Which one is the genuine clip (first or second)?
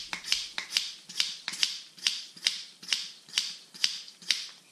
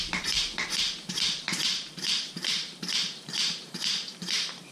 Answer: first